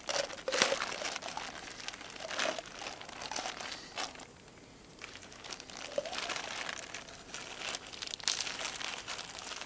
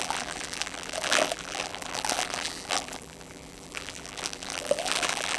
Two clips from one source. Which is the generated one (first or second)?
second